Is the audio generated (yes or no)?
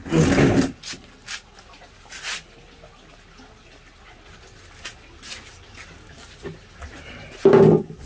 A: no